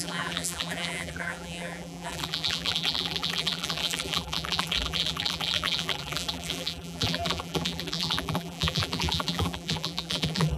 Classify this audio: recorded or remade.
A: remade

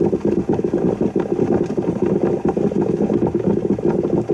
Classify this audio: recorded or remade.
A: recorded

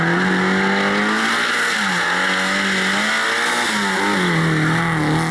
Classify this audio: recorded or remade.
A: recorded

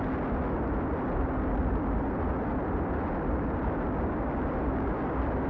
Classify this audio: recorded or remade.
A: recorded